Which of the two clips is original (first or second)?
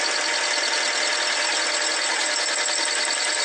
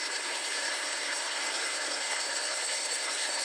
first